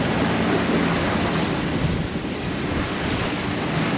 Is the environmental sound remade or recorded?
recorded